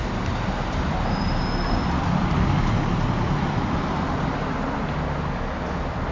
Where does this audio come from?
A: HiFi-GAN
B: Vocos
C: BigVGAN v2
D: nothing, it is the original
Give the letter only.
D